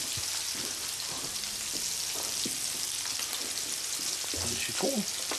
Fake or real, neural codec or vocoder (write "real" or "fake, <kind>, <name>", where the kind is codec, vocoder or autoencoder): real